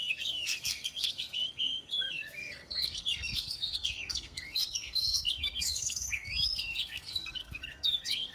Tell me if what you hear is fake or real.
fake